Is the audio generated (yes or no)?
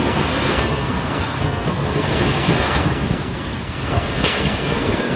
yes